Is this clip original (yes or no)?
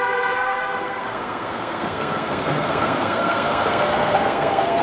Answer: no